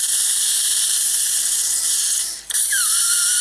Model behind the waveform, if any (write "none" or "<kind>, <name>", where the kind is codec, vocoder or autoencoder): vocoder, BigVGAN v2